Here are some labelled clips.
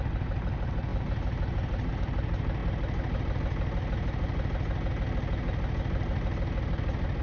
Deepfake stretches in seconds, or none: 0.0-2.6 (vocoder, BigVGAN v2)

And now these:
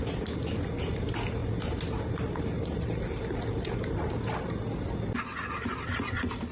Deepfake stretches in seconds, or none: none

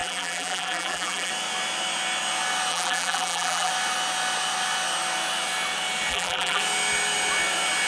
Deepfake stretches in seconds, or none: 0.0-1.3 (vocoder, BigVGAN v2); 2.7-3.7; 6.1-6.6